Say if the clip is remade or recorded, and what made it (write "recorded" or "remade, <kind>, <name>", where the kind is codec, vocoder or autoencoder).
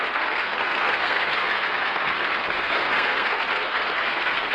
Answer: remade, codec, SNAC